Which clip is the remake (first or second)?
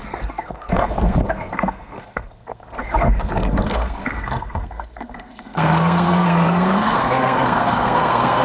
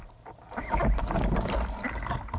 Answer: first